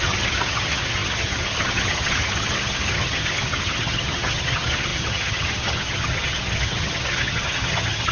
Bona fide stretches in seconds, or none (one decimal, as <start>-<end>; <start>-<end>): none